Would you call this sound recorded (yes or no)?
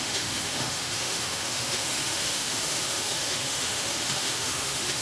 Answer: no